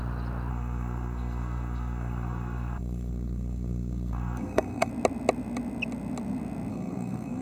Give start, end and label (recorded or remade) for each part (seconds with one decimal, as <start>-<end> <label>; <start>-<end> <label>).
0.0-0.5 recorded; 0.5-4.9 remade; 4.9-6.7 recorded; 6.7-7.4 remade